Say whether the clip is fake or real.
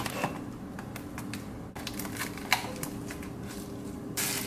real